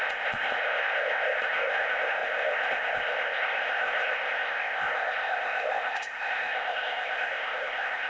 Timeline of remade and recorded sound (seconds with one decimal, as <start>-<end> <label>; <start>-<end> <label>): 0.0-8.1 remade